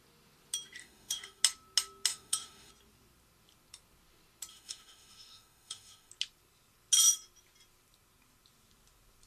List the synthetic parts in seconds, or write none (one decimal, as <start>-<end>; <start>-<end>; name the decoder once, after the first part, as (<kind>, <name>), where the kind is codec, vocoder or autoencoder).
0.8-1.4 (autoencoder, DAC-VAE); 2.1-2.7; 4.5-6.1